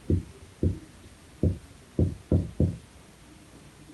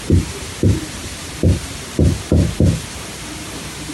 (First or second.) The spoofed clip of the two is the second